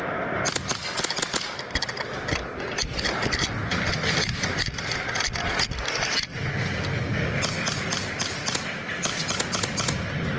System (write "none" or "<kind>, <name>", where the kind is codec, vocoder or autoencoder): none